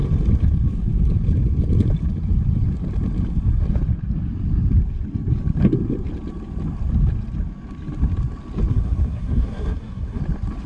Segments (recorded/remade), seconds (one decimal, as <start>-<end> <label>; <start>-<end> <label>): 0.0-8.7 recorded; 8.7-10.2 remade; 10.2-10.7 recorded